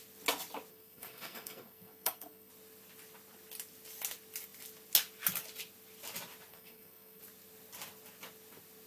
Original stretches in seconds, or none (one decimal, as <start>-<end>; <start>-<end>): 0.0-0.7; 2.5-6.5; 7.2-8.9